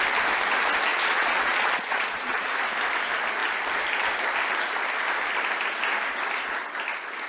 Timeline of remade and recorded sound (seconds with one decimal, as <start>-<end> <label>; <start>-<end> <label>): 0.0-0.9 recorded; 0.9-2.5 remade; 2.5-7.3 recorded